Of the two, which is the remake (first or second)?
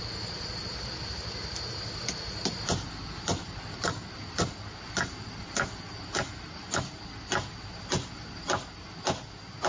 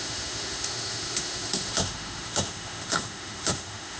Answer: second